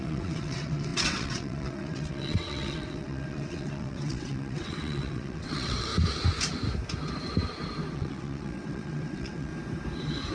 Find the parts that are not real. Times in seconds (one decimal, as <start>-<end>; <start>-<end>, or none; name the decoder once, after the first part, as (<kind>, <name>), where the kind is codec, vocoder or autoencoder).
0.0-5.9 (vocoder, WaveNeXt); 7.9-9.5